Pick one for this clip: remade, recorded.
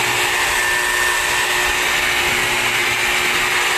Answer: recorded